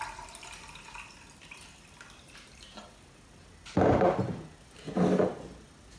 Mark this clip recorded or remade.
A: recorded